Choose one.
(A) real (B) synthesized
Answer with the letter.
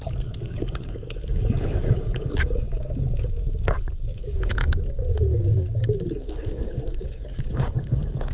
B